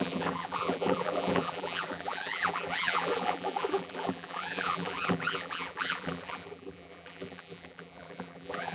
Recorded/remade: remade